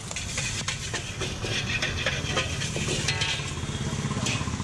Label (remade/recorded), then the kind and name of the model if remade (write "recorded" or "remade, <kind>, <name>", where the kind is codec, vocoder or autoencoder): recorded